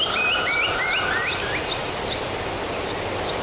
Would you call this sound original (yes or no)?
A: yes